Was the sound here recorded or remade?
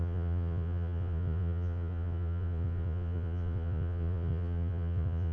remade